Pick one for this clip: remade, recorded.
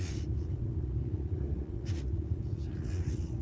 remade